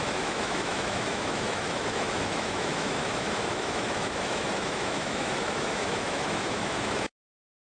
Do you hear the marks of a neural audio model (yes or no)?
yes